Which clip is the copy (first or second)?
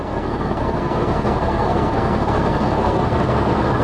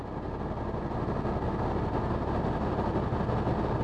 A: first